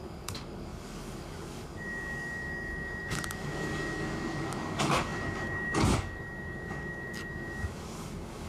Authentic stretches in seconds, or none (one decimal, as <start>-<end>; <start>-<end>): none

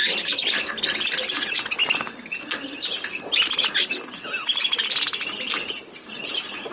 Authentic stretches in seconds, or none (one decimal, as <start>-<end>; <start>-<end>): 0.0-6.7

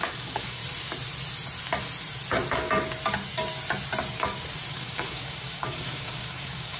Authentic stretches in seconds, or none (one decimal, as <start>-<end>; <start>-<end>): 0.6-4.7

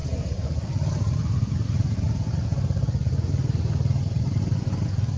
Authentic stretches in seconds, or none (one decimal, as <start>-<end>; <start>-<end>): 0.0-5.2

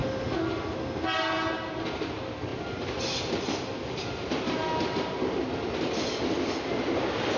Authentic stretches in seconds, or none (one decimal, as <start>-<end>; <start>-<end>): 0.0-7.4